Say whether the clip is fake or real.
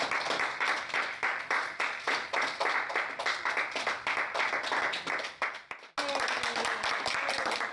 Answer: real